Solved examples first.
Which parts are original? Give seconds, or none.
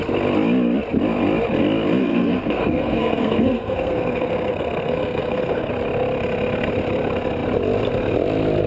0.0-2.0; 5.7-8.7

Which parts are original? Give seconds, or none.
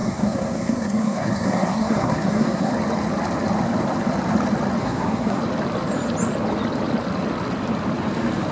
2.7-4.8; 5.4-8.5